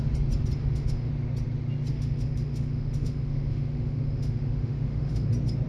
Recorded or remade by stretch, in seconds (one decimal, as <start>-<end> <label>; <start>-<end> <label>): 0.0-0.6 recorded; 0.6-1.1 remade; 1.1-1.9 recorded; 1.9-5.3 remade; 5.3-5.7 recorded